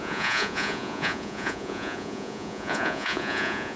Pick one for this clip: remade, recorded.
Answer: remade